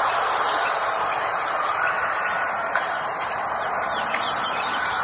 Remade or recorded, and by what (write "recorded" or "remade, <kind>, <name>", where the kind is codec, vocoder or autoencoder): remade, vocoder, BigVGAN v2